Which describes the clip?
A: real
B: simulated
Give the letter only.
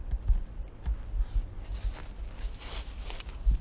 A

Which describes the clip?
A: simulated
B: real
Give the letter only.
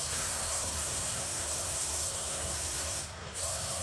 A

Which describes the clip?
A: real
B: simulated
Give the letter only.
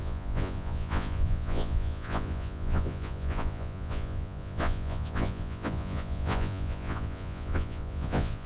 B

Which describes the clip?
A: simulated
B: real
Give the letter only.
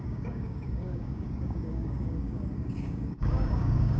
A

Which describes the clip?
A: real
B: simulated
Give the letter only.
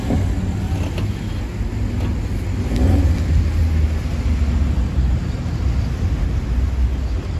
A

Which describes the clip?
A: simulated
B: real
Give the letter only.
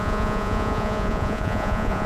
A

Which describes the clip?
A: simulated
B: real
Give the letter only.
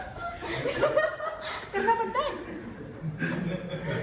A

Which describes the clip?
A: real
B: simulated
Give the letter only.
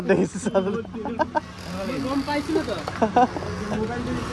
A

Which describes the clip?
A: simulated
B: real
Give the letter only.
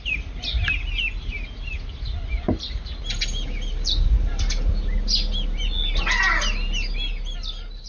B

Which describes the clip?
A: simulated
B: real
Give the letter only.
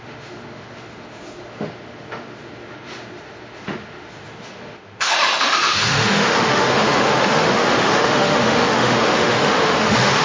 A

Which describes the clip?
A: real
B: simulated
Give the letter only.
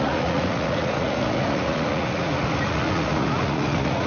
B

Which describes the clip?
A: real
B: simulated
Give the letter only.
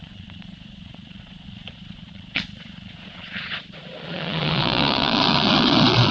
B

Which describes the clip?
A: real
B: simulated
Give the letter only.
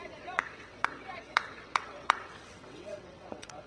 B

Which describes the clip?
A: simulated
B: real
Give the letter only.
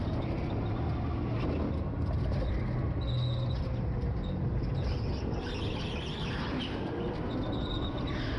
B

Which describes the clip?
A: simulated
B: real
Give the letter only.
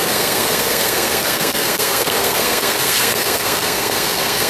A